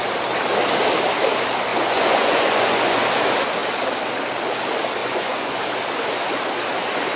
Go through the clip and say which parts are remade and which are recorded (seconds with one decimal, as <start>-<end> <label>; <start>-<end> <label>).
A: 0.0-1.7 recorded; 1.7-3.0 remade; 3.0-5.0 recorded; 5.0-5.6 remade; 5.6-7.2 recorded